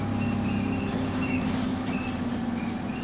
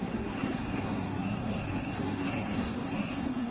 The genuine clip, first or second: first